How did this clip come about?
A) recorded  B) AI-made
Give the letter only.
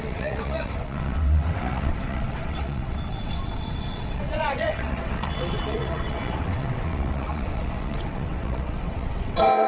B